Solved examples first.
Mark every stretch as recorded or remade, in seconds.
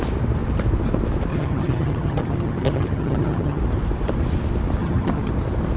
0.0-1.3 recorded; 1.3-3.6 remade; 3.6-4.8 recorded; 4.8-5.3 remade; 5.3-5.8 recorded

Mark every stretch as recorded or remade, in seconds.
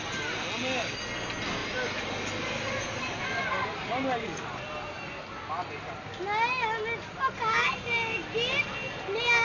0.0-9.4 recorded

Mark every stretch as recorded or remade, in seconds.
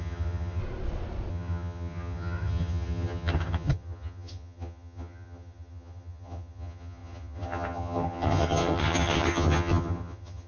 0.0-0.6 remade; 0.6-1.3 recorded; 1.3-10.5 remade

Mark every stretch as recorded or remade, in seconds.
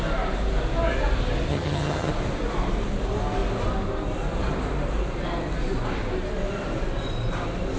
0.0-1.5 recorded; 1.5-2.1 remade; 2.1-7.8 recorded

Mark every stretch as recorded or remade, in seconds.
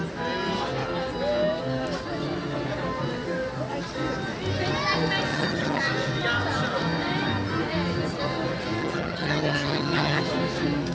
0.0-5.3 recorded; 5.3-5.8 remade; 5.8-8.8 recorded; 8.8-10.2 remade; 10.2-10.9 recorded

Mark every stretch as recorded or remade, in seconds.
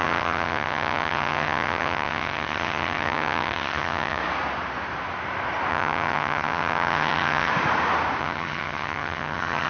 0.0-4.2 remade; 4.2-5.7 recorded; 5.7-7.5 remade; 7.5-8.2 recorded; 8.2-9.7 remade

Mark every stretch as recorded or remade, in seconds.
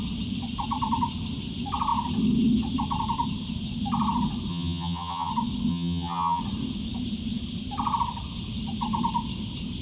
0.0-4.5 recorded; 4.5-5.3 remade; 5.3-5.7 recorded; 5.7-6.4 remade; 6.4-9.8 recorded